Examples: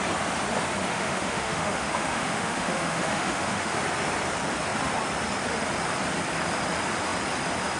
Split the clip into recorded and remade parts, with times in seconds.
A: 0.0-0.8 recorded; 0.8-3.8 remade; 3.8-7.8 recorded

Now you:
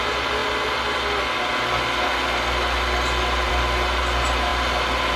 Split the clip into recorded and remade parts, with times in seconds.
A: 0.0-5.2 recorded